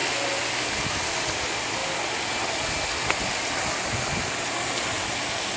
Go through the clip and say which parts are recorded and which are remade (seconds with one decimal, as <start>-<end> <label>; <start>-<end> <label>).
0.0-5.6 recorded